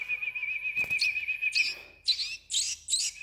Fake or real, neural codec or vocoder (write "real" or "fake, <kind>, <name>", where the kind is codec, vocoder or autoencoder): real